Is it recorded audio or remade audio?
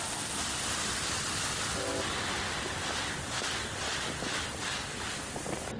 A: recorded